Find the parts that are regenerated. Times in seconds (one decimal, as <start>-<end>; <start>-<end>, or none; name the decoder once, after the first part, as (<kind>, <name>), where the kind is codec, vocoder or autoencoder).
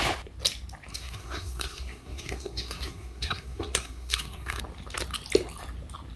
0.9-4.6 (codec, SNAC)